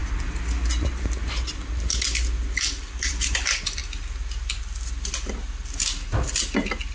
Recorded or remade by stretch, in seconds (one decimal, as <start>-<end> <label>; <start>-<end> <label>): 0.0-6.9 recorded